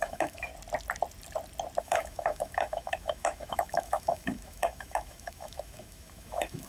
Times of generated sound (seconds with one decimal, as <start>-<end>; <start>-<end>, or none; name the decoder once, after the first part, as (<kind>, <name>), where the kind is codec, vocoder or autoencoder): 0.0-0.5 (autoencoder, DAC-VAE); 1.8-6.7